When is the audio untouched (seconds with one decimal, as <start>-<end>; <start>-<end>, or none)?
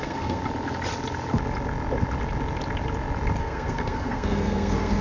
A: 0.4-3.4